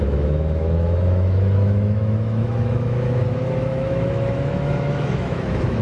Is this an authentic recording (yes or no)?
no